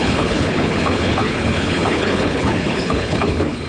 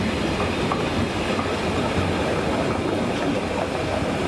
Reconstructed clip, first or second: first